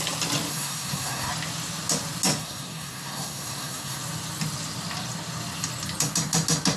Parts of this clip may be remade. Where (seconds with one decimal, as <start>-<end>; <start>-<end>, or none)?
0.5-1.3; 2.4-4.0